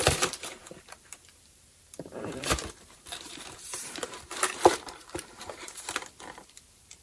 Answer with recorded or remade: remade